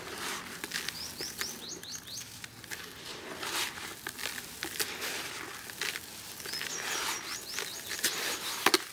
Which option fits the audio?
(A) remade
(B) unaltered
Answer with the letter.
B